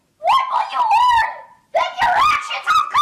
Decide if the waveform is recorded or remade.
recorded